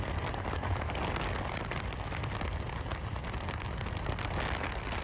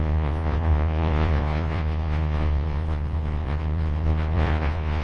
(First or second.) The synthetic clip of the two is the second